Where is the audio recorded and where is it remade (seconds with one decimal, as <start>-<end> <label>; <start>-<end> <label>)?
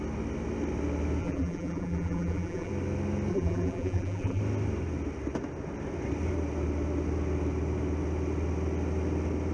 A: 0.0-1.2 recorded; 1.2-2.7 remade; 2.7-3.3 recorded; 3.3-4.4 remade; 4.4-9.5 recorded